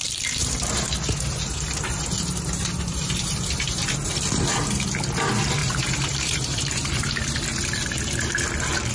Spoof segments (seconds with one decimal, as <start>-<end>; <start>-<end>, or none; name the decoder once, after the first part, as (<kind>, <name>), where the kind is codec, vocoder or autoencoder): 0.4-4.1 (vocoder, BigVGAN v2); 5.6-7.1